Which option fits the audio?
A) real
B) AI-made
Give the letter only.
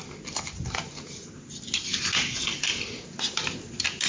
A